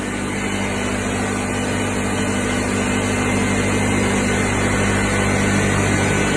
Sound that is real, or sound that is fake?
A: real